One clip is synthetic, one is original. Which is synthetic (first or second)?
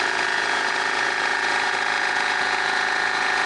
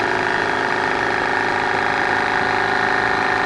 first